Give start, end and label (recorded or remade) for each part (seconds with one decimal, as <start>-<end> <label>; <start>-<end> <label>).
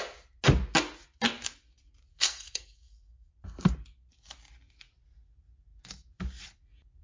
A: 0.0-2.1 recorded; 2.1-3.3 remade; 3.3-7.0 recorded